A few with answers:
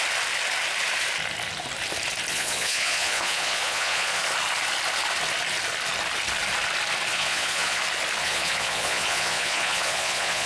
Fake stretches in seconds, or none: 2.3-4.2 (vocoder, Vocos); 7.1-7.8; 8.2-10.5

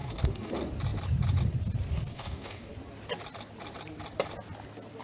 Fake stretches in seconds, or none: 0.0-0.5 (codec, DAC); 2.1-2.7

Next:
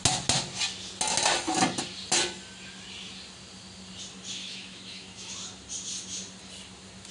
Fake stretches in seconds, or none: 4.4-5.3 (autoencoder, DAC-VAE)